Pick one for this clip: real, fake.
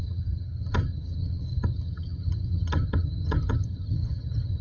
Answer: fake